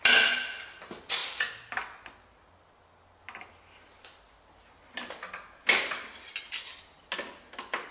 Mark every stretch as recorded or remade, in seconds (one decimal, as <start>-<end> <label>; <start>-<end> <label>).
0.0-7.9 recorded